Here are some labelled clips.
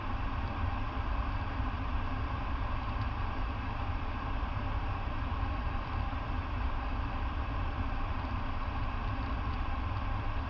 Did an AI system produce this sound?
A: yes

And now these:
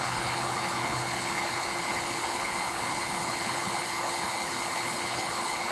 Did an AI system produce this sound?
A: yes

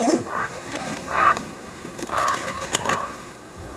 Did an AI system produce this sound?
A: yes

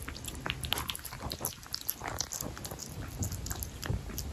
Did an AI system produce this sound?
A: no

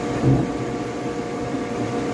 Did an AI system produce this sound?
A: no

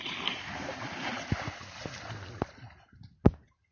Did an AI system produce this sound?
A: no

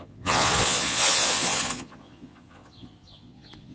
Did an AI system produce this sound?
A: yes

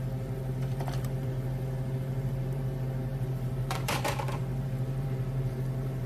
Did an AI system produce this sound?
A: yes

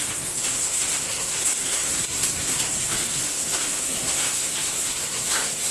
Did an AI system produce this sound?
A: yes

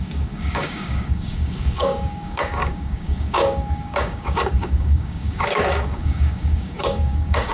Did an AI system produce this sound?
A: yes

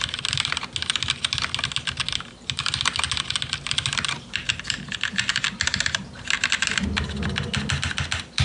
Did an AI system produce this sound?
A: no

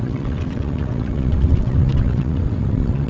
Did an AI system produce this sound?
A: yes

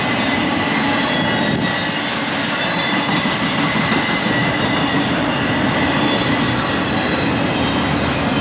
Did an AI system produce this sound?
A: no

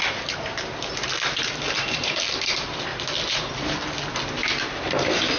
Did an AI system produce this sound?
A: no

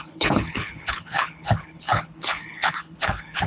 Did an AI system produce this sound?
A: yes